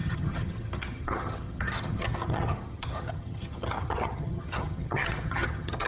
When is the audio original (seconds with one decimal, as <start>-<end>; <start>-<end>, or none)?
none